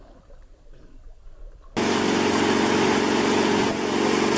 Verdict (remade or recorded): recorded